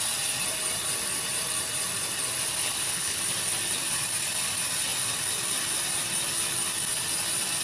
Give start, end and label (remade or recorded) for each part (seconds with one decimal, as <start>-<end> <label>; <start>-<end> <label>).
0.0-2.6 recorded; 2.6-3.2 remade; 3.2-7.6 recorded